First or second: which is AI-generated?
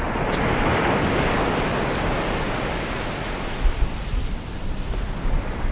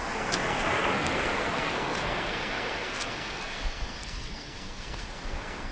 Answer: second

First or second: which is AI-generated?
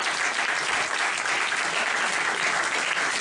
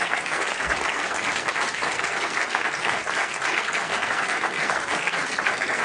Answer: second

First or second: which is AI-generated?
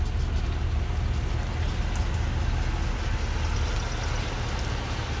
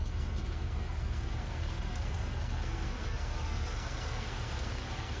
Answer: second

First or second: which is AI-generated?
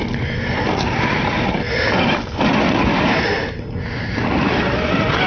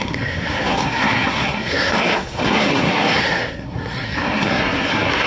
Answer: second